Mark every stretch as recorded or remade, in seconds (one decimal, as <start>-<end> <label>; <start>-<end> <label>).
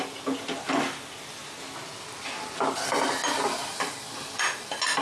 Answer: 0.0-5.0 recorded